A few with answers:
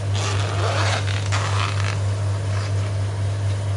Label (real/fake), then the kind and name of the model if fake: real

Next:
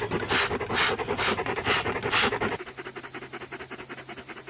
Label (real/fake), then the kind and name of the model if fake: real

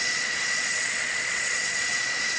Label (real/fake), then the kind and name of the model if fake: fake, vocoder, Vocos